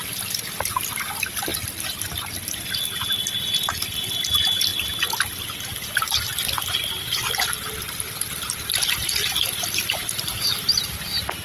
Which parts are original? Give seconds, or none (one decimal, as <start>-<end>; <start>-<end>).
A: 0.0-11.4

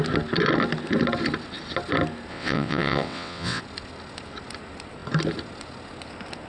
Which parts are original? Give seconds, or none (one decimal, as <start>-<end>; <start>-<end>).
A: 0.0-2.3; 3.6-6.5

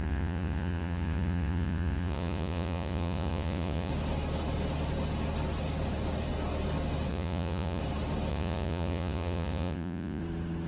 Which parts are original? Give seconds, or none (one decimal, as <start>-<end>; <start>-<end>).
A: 3.9-7.1; 7.8-8.3; 10.2-10.7

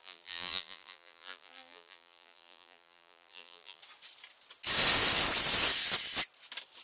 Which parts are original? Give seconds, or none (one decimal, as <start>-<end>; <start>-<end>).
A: 3.8-6.8

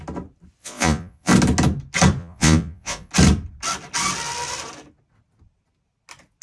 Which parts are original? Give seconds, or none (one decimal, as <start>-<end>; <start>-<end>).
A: 0.0-0.6; 1.3-2.2; 3.1-6.4